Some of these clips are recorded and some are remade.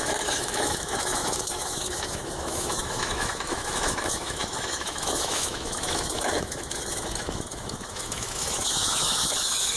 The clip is remade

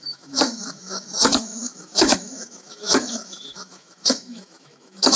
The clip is remade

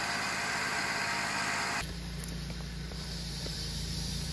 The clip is remade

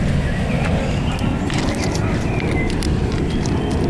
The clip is recorded